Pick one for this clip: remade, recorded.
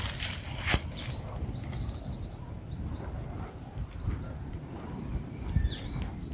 recorded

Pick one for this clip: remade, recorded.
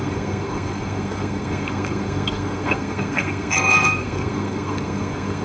remade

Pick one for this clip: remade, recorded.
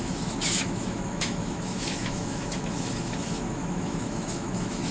remade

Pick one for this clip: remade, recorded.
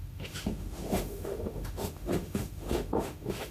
remade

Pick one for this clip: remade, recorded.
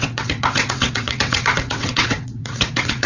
remade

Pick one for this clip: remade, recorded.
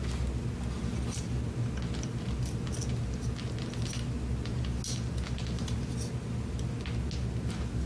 recorded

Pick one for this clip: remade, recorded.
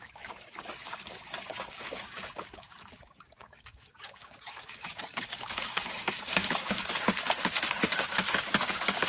remade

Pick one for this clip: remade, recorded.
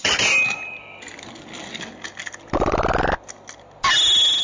recorded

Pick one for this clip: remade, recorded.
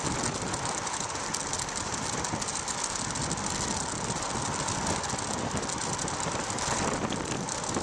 recorded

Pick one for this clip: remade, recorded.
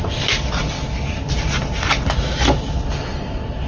recorded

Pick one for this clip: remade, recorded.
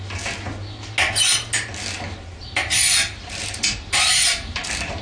recorded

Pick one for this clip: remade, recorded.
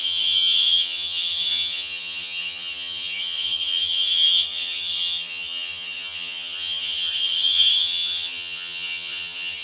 remade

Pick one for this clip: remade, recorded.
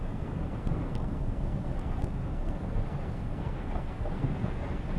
remade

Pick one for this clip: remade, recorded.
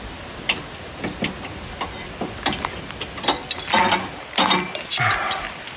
recorded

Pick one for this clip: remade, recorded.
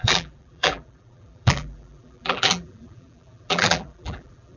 remade